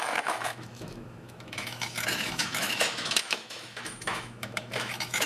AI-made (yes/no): yes